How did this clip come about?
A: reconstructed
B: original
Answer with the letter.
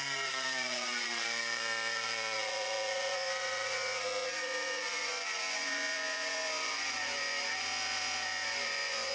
A